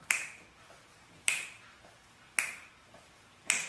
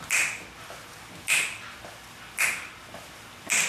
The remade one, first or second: first